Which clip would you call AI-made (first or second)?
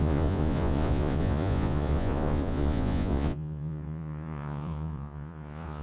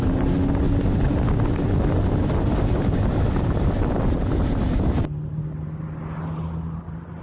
first